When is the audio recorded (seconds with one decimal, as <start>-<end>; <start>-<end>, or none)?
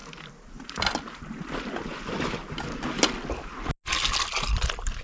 1.2-5.0